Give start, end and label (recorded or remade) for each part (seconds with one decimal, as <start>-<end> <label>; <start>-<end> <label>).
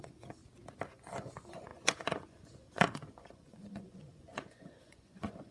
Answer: 0.0-0.4 remade; 0.4-0.9 recorded; 0.9-5.5 remade